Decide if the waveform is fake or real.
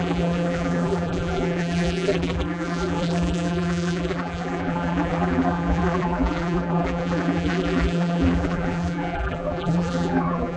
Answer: fake